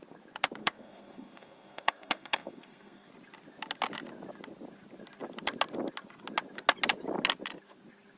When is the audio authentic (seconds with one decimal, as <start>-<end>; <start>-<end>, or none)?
0.0-0.6; 3.1-8.2